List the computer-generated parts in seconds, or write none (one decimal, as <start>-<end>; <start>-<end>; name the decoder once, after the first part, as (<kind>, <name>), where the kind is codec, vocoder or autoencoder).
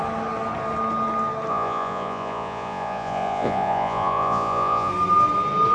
1.5-4.9 (vocoder, Vocos)